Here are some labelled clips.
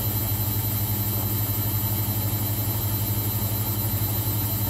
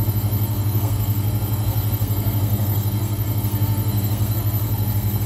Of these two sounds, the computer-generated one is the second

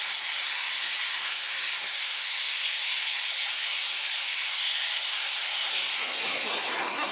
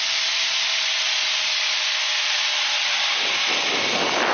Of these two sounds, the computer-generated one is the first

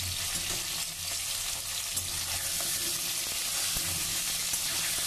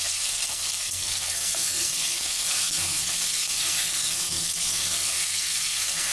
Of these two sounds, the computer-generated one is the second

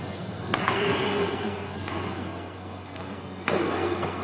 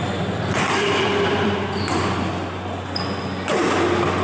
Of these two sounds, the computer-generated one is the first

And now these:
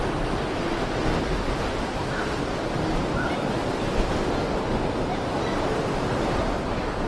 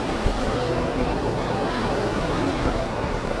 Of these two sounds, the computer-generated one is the second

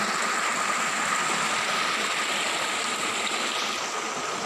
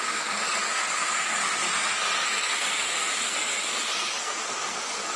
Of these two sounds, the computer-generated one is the second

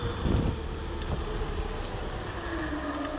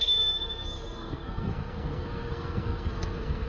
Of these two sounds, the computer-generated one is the second